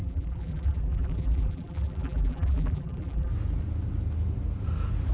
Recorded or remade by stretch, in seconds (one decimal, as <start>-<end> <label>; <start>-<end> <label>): 0.0-3.3 remade; 3.3-5.1 recorded